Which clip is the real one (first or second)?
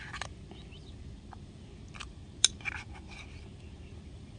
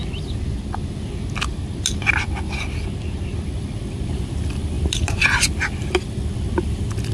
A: second